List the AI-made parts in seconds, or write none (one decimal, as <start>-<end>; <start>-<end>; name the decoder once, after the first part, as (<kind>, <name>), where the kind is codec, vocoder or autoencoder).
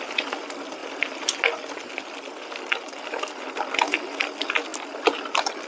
none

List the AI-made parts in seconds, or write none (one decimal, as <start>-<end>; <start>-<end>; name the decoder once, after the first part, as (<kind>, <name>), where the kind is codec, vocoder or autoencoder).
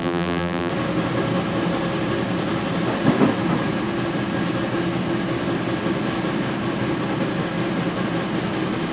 0.0-0.7 (vocoder, BigVGAN v2)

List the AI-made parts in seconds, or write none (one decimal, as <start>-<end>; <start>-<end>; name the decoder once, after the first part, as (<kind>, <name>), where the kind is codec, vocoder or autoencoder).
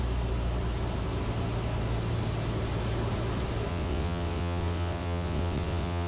3.7-6.1 (vocoder, WaveNeXt)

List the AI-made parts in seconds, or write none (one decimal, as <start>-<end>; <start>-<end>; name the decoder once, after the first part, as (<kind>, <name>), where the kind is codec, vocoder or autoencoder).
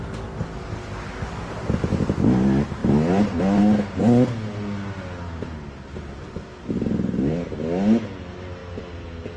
none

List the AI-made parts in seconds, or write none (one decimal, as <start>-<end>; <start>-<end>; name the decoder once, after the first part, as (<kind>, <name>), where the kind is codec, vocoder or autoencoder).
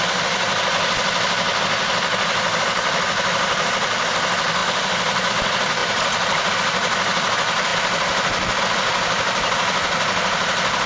5.8-6.5 (vocoder, BigVGAN v2)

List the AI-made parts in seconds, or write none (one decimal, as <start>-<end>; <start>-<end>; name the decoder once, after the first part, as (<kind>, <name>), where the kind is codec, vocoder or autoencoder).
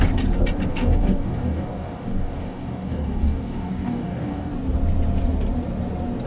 0.7-4.5 (codec, DAC)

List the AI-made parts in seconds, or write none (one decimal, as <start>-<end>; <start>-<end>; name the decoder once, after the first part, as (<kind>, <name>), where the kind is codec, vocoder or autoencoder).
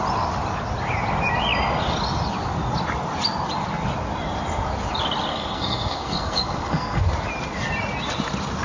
5.3-7.0 (codec, SNAC)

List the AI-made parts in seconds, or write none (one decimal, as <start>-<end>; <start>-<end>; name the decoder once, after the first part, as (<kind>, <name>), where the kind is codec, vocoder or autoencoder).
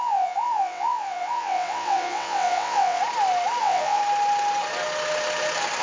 0.0-3.0 (vocoder, WaveNeXt); 3.6-4.0